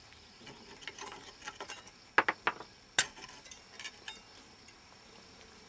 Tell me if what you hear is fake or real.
real